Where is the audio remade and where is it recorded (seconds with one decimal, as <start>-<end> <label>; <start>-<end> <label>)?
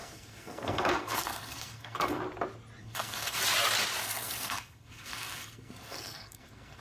0.0-2.2 remade; 2.2-2.8 recorded; 2.8-3.4 remade; 3.4-4.0 recorded; 4.0-6.8 remade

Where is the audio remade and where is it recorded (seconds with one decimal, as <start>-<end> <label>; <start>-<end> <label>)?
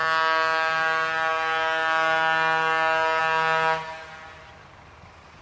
0.0-5.4 recorded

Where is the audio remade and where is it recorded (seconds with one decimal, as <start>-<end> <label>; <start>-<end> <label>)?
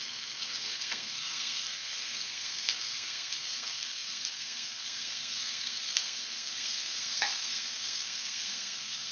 0.0-9.1 remade